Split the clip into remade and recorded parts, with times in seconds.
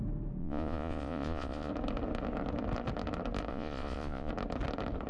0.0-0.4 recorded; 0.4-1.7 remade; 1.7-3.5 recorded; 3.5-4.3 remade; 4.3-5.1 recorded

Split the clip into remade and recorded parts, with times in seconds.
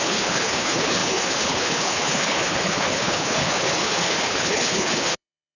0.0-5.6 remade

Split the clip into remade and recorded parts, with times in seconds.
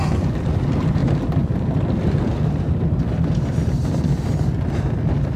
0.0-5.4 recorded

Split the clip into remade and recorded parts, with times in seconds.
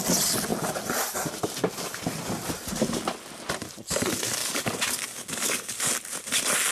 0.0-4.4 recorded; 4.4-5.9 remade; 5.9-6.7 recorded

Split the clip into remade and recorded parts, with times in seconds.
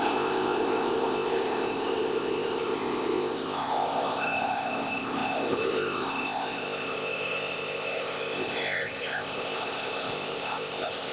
0.0-11.1 remade